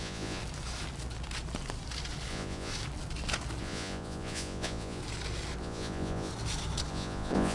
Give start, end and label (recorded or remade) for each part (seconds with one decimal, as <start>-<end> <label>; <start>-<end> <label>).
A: 0.0-0.4 remade; 0.4-2.3 recorded; 2.3-2.7 remade; 2.7-3.6 recorded; 3.6-5.0 remade; 5.0-5.6 recorded; 5.6-6.3 remade; 6.3-6.9 recorded; 6.9-7.5 remade